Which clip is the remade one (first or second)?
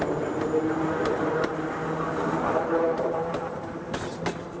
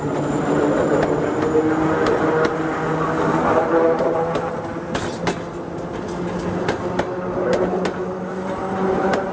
first